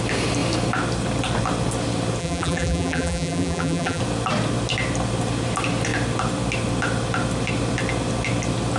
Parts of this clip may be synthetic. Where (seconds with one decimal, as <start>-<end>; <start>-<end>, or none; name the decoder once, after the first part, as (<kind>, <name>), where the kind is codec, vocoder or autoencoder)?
2.2-4.0 (vocoder, BigVGAN v2)